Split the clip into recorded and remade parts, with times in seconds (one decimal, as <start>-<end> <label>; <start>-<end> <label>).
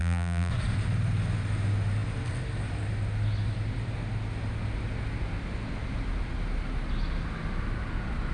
0.0-0.5 remade; 0.5-8.3 recorded